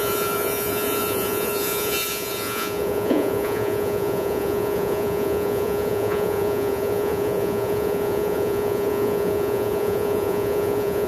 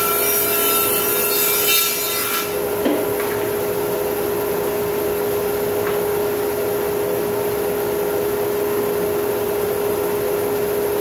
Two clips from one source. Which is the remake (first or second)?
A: first